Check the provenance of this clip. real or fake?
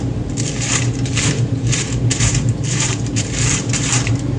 fake